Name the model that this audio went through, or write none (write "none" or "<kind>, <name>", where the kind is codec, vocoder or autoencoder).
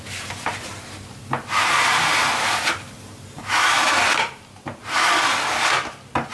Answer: none